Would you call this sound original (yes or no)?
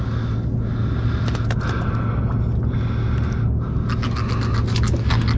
yes